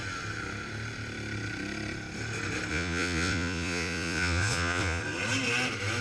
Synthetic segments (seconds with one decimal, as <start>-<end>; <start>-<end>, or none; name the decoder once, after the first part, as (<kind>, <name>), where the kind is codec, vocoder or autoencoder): 2.7-5.0 (vocoder, Vocos)